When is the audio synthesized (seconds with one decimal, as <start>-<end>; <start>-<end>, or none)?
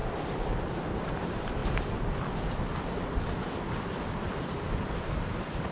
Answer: 0.9-1.6; 4.5-5.7